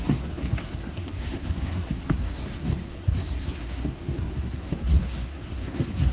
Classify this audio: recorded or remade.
remade